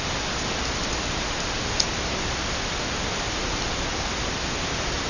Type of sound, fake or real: real